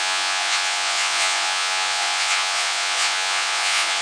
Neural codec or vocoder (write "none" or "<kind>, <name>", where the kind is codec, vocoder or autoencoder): vocoder, Vocos